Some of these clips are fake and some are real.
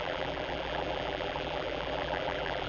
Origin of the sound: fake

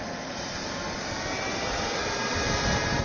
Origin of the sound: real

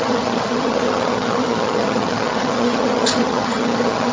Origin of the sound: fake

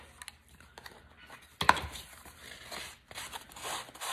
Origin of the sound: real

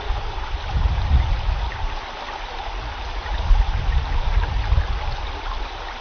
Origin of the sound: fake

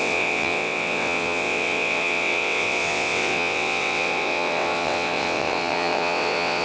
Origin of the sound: fake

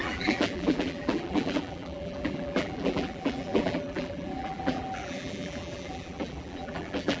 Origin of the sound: fake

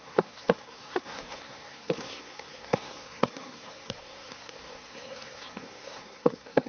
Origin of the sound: fake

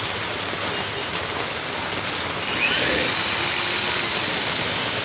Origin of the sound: real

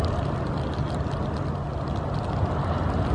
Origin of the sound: real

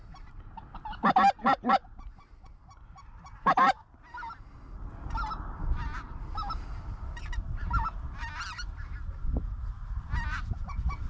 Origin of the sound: real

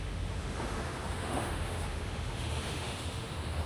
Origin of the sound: fake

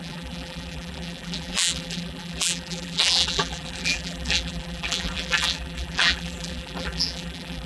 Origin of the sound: fake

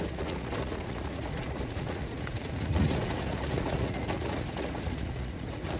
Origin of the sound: fake